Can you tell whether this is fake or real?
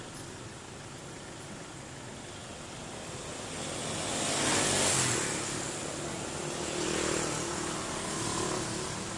real